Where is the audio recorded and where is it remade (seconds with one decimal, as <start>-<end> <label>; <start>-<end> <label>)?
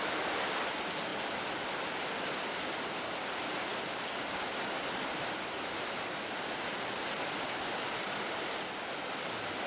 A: 0.0-9.7 recorded